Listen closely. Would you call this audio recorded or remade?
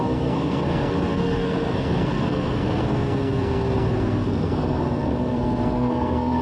remade